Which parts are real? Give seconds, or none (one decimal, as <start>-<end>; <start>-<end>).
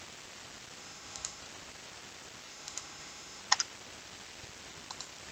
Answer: 0.0-0.8; 1.4-2.5; 3.4-5.3